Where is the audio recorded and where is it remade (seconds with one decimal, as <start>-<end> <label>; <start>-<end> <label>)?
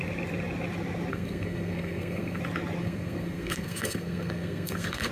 0.0-1.1 recorded; 1.1-2.4 remade; 2.4-2.8 recorded; 2.8-5.1 remade